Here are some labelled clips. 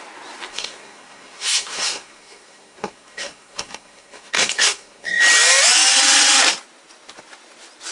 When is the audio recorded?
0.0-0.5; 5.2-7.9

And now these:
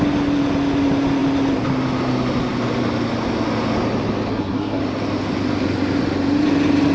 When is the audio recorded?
0.0-4.3; 4.8-6.9

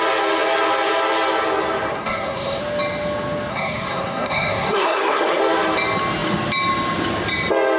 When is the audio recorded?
0.0-1.9; 2.6-3.5; 5.4-7.8

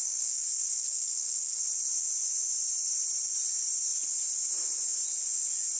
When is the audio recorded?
1.6-5.8

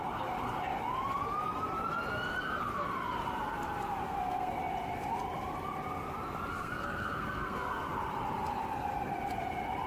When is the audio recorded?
0.0-4.0; 4.5-6.5; 7.7-9.9

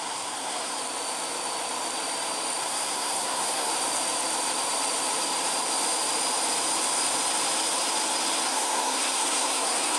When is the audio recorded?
0.8-2.6; 3.7-8.5

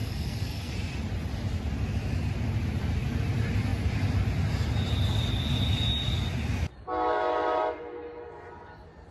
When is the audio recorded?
0.7-9.1

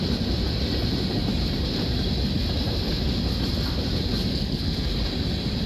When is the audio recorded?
0.0-4.3; 4.9-5.7